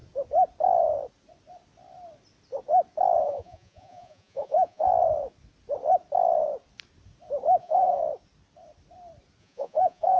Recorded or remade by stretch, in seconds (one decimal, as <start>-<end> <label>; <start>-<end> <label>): 0.0-3.2 recorded; 3.2-4.9 remade; 4.9-7.6 recorded; 7.6-8.0 remade; 8.0-9.4 recorded; 9.4-10.2 remade